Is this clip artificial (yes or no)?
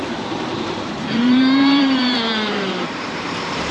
yes